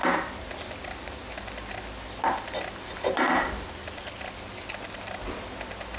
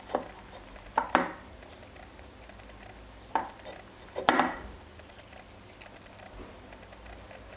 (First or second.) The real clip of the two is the first